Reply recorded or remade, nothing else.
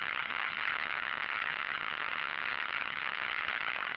remade